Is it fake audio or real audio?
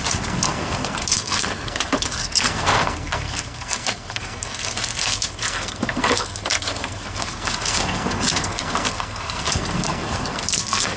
fake